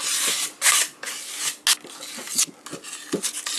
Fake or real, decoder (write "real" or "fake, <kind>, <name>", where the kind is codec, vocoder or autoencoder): real